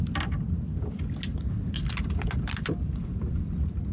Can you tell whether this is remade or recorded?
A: recorded